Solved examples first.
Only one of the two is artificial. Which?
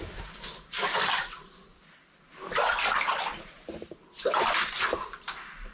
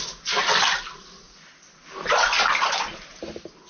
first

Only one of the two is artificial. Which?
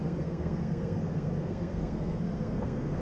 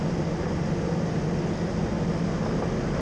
first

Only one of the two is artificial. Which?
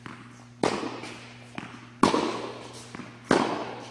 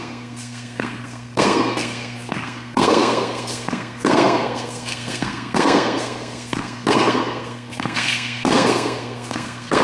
second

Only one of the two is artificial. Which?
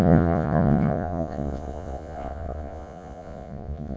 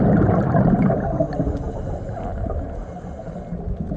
first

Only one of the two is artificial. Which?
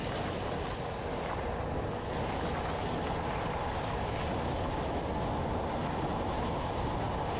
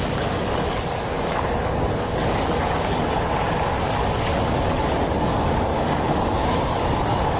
second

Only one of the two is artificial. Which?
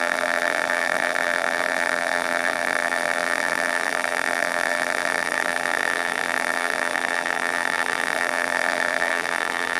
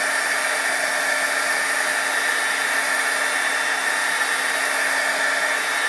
first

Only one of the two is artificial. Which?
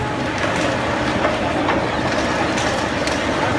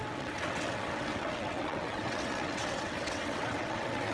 second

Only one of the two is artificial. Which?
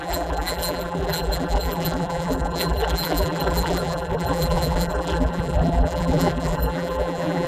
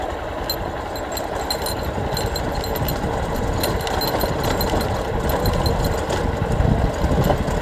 first